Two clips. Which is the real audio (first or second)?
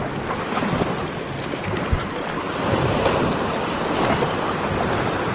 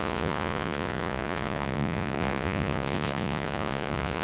first